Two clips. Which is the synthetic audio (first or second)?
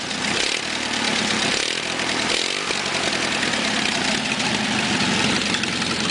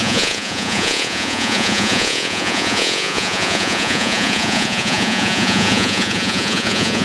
second